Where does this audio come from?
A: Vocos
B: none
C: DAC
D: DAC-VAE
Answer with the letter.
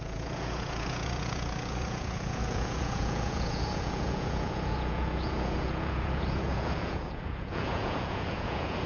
A